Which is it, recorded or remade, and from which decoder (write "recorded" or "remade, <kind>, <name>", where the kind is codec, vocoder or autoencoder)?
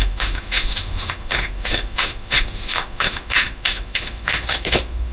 remade, autoencoder, DAC-VAE